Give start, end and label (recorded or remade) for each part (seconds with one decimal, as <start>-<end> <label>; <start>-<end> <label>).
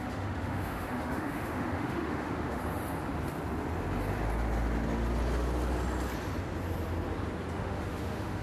0.0-2.6 remade; 2.6-7.5 recorded; 7.5-8.4 remade